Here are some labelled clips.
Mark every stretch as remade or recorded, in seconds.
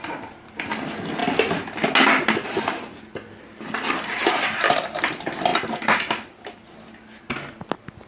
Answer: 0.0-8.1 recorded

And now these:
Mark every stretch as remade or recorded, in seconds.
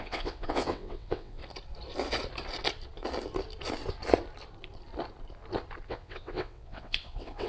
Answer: 0.0-1.4 remade; 1.4-5.9 recorded; 5.9-7.5 remade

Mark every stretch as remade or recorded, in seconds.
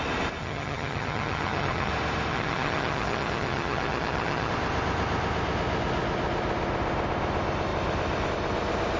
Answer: 0.0-0.4 recorded; 0.4-1.9 remade; 1.9-2.3 recorded; 2.3-4.5 remade; 4.5-9.0 recorded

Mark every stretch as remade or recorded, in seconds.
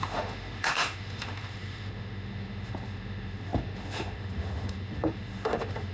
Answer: 0.0-5.9 remade